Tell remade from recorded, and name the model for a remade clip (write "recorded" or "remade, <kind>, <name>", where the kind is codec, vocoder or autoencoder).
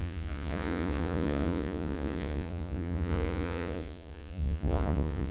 remade, vocoder, Vocos